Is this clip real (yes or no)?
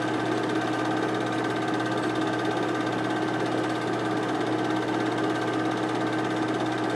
yes